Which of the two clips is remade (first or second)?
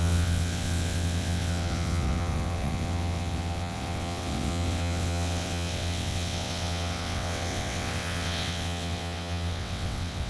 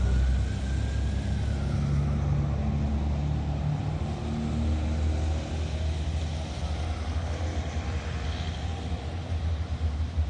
first